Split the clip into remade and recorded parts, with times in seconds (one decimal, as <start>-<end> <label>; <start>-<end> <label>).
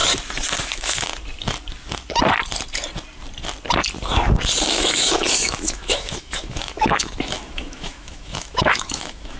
0.0-0.6 recorded; 0.6-1.1 remade; 1.1-4.7 recorded; 4.7-9.4 remade